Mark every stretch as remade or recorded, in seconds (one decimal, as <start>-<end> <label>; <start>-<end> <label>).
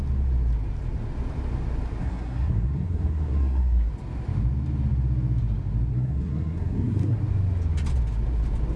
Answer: 0.0-2.0 recorded; 2.0-3.9 remade; 3.9-5.9 recorded; 5.9-7.2 remade; 7.2-8.8 recorded